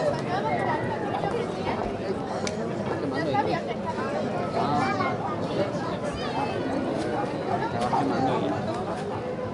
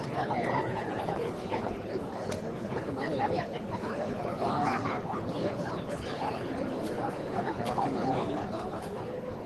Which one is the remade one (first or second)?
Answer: second